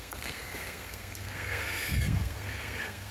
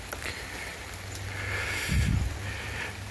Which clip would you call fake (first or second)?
first